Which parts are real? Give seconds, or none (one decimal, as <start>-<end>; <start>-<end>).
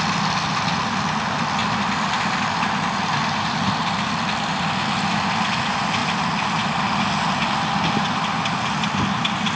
0.0-9.6